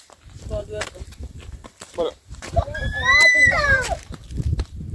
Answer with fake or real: fake